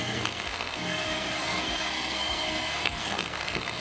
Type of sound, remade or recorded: remade